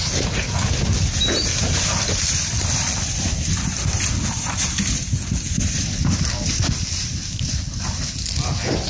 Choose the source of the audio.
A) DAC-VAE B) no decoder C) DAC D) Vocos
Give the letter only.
B